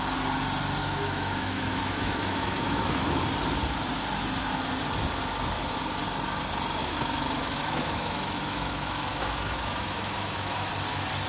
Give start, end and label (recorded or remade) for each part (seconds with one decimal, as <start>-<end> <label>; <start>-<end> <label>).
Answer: 0.0-0.8 recorded; 0.8-3.2 remade; 3.2-6.8 recorded; 6.8-10.7 remade; 10.7-11.3 recorded